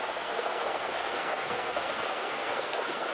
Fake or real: fake